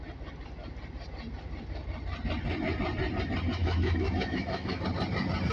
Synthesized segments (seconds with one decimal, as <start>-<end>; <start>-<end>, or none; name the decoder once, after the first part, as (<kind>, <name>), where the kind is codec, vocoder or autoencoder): 3.6-4.8 (autoencoder, DAC-VAE)